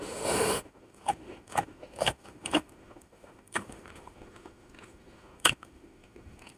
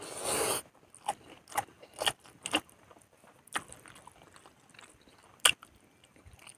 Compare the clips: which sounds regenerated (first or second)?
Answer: first